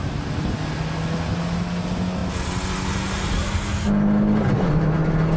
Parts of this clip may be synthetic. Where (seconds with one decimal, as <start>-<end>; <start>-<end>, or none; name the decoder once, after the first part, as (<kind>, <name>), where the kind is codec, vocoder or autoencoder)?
none